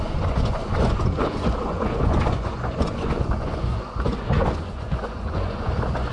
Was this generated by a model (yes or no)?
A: yes